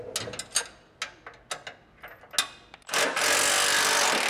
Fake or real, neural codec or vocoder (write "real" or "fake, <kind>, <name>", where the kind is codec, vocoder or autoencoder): real